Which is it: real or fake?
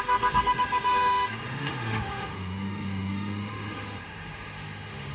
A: fake